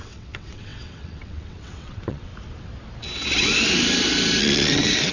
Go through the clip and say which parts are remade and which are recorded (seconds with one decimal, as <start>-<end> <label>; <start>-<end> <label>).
0.0-2.3 remade; 2.3-4.4 recorded; 4.4-5.1 remade